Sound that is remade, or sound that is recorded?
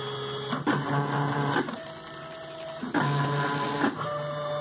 recorded